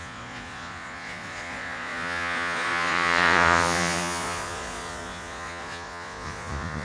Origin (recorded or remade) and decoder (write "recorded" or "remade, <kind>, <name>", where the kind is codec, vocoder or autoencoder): remade, vocoder, Vocos